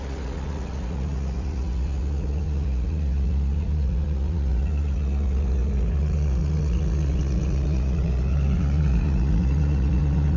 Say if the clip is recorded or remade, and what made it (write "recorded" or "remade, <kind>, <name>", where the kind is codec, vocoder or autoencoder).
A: remade, vocoder, Vocos